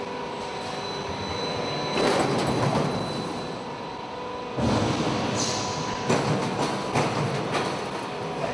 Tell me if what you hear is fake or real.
real